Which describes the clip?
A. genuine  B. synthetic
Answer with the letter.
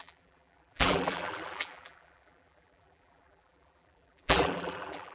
B